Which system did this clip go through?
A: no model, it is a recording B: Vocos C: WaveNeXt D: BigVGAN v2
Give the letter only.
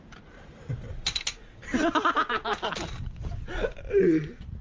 A